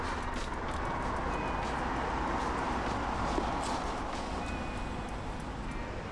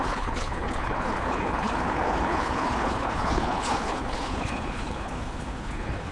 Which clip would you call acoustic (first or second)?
first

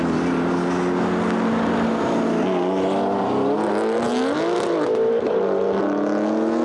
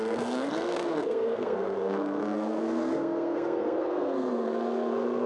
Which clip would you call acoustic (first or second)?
first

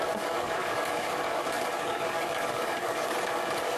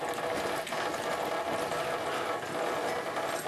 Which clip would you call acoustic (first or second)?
second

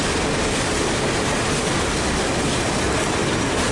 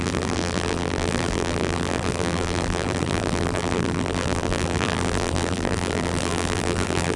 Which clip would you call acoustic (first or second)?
first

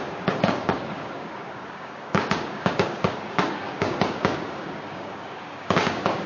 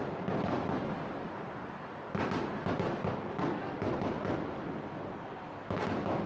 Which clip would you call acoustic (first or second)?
second